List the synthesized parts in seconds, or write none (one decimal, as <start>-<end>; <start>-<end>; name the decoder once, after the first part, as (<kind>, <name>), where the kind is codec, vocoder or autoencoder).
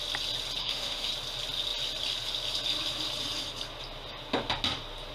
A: 0.6-1.1 (autoencoder, DAC-VAE)